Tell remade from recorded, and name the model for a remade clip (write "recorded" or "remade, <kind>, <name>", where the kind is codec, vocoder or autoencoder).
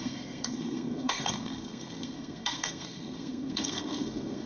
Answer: remade, codec, SNAC